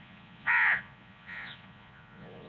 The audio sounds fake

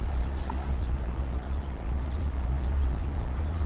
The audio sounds fake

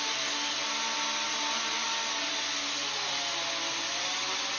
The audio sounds real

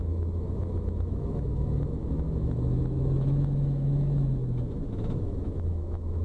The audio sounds fake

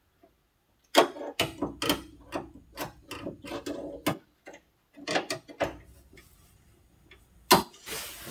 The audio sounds real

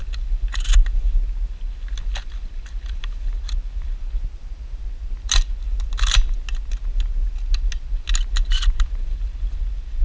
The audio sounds real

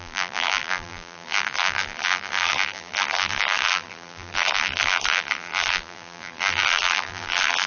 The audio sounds fake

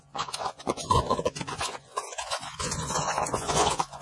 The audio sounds fake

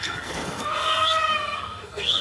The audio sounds fake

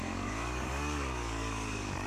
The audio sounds fake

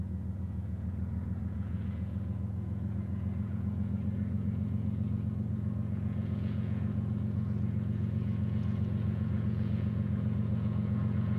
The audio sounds fake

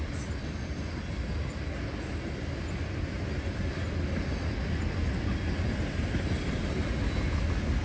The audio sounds real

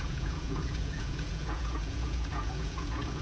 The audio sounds fake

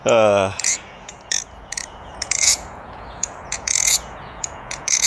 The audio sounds fake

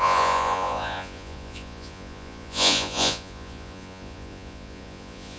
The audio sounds fake